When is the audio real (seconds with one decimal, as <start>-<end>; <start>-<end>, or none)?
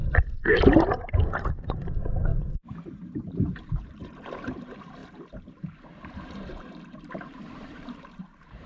0.0-1.5; 2.3-2.9